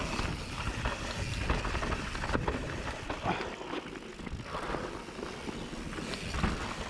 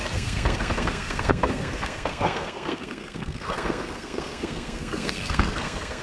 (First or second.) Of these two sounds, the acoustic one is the first